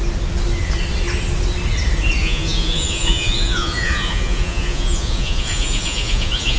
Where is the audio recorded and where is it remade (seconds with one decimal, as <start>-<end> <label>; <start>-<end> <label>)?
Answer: 0.0-2.2 recorded; 2.2-6.6 remade

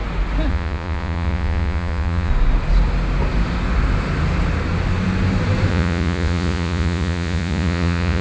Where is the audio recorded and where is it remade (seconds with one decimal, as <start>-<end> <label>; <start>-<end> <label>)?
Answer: 0.0-0.5 recorded; 0.5-2.3 remade; 2.3-5.7 recorded; 5.7-8.2 remade